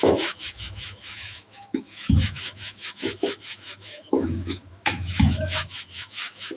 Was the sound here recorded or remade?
remade